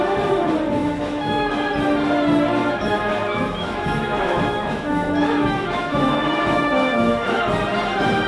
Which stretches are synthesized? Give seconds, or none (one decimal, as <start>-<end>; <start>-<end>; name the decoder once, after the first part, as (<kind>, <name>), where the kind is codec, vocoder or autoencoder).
0.8-1.5 (autoencoder, DAC-VAE); 2.6-7.4